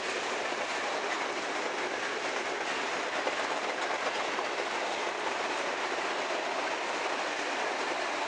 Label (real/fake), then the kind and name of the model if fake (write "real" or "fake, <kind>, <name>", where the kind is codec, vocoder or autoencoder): real